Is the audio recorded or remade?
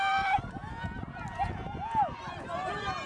recorded